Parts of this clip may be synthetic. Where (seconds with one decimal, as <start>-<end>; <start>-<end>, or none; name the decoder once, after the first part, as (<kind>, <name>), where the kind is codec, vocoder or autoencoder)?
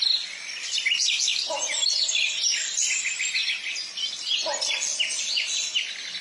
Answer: 1.3-2.2 (vocoder, BigVGAN v2)